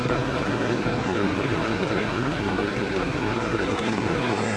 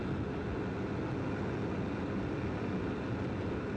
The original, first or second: second